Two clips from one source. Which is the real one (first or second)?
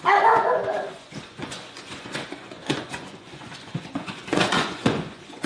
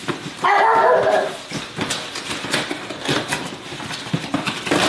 second